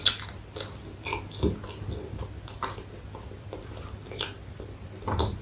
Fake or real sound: real